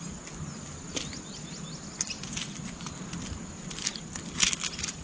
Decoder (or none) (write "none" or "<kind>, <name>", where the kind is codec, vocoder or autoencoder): none